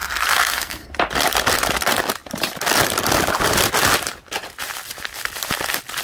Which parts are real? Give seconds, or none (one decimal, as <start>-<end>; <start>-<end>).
0.9-6.0